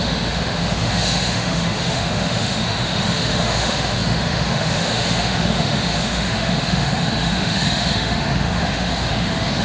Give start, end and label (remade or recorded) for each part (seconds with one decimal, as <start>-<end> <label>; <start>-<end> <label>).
0.0-9.6 remade